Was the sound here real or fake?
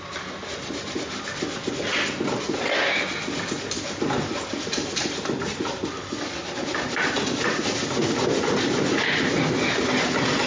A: real